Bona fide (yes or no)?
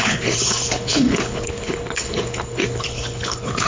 no